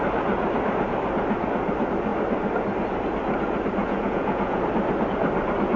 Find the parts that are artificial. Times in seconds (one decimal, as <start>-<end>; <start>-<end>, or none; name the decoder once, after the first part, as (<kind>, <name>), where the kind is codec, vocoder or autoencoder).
3.8-4.6 (vocoder, Vocos)